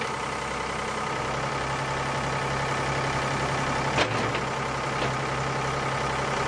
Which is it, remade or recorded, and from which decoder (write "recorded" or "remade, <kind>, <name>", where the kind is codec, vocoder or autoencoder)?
recorded